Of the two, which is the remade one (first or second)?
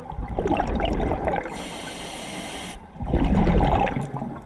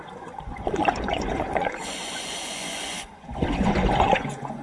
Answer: second